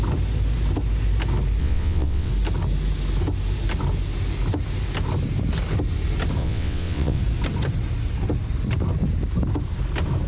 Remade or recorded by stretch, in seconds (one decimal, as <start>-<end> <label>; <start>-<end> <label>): 0.0-1.6 recorded; 1.6-2.3 remade; 2.3-6.4 recorded; 6.4-7.2 remade; 7.2-10.3 recorded